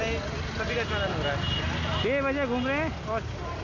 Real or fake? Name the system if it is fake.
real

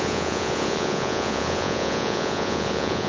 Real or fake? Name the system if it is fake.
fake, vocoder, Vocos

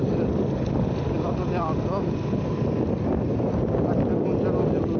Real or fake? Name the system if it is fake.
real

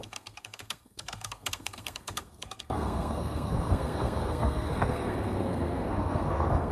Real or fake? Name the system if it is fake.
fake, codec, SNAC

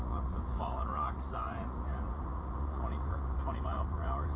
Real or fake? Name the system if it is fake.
fake, vocoder, Vocos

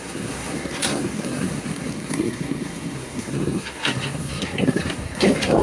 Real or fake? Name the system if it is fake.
fake, codec, SNAC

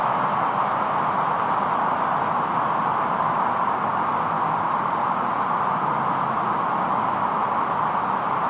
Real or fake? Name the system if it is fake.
real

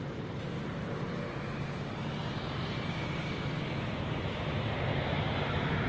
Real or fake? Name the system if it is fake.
fake, vocoder, BigVGAN v2